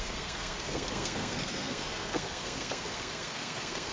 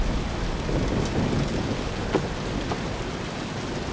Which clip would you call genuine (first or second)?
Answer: second